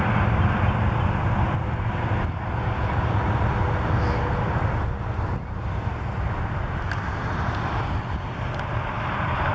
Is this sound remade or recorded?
recorded